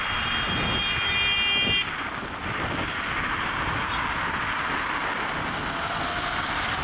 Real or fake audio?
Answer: real